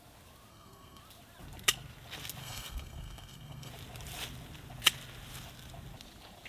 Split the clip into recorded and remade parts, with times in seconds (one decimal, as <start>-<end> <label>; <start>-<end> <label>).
0.0-0.5 recorded; 0.5-1.0 remade; 1.0-2.4 recorded; 2.4-3.7 remade; 3.7-6.5 recorded